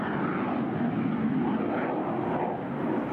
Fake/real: real